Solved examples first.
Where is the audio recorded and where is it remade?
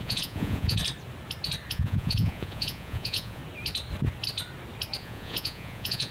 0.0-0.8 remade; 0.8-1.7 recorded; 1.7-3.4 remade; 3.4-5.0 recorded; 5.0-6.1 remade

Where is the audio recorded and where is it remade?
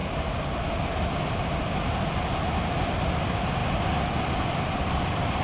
0.0-5.4 recorded